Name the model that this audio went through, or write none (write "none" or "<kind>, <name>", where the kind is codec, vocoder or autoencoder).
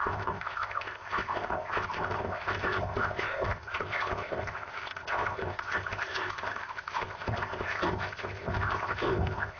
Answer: codec, ZipCodec